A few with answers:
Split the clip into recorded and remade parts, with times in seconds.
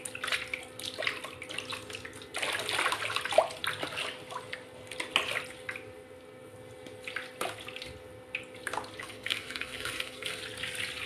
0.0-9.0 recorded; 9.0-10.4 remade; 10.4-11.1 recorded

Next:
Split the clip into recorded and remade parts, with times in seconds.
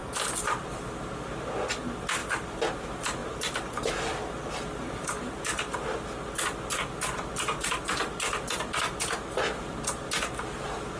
0.0-11.0 recorded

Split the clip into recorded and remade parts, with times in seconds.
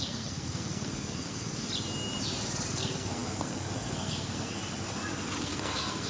0.0-1.5 remade; 1.5-2.7 recorded; 2.7-4.6 remade; 4.6-5.4 recorded; 5.4-6.1 remade